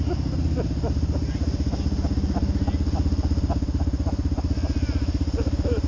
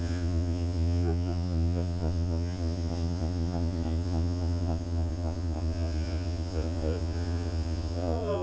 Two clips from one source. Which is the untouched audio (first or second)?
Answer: first